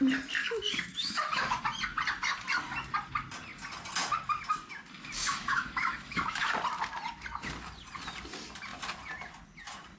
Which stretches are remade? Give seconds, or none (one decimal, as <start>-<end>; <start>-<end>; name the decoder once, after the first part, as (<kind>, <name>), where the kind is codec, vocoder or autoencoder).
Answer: 0.4-1.6 (autoencoder, DAC-VAE); 5.2-6.5